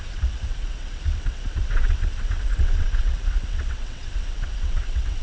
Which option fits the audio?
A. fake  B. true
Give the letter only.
A